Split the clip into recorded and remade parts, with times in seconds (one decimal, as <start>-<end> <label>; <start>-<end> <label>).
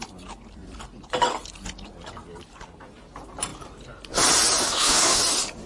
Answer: 0.0-4.6 recorded; 4.6-5.2 remade; 5.2-5.7 recorded